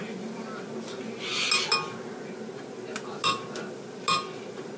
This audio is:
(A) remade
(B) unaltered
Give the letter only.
B